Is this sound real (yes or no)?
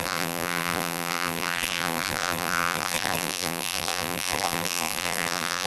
no